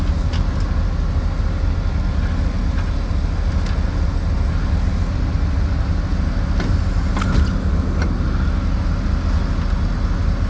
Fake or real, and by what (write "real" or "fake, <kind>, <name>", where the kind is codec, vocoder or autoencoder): real